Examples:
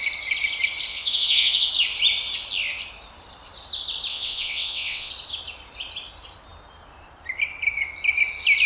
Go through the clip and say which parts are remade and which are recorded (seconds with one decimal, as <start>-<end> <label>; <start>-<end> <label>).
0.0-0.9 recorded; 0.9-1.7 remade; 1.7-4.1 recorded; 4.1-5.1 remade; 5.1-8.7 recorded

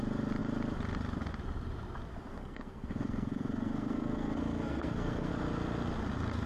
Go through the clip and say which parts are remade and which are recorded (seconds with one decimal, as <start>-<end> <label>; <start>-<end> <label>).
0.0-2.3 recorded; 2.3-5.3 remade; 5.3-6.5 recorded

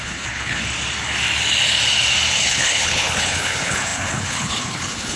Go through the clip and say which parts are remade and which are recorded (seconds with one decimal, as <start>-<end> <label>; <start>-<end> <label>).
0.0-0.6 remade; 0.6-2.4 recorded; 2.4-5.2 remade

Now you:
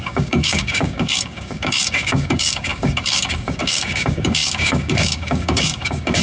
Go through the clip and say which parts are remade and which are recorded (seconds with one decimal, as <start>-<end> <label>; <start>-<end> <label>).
0.0-6.2 remade